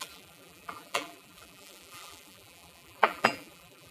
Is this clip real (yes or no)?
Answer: no